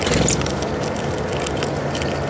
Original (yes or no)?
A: yes